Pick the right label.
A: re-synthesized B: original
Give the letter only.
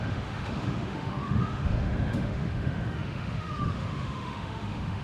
A